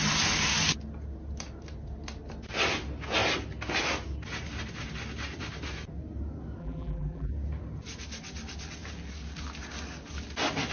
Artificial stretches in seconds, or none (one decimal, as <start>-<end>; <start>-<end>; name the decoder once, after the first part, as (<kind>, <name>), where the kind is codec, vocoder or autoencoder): 6.6-7.3 (vocoder, BigVGAN v2)